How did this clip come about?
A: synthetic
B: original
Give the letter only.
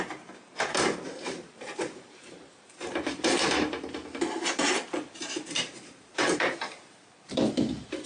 A